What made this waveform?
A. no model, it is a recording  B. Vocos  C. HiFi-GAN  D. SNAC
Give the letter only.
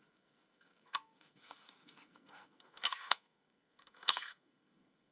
D